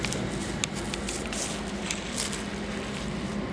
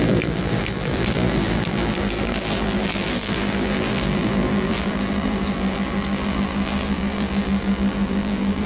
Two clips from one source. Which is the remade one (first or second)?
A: second